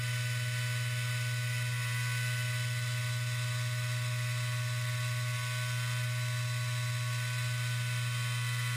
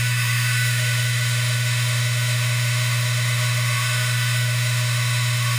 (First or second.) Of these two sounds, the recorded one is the first